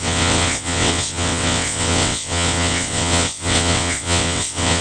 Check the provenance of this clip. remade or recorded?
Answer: remade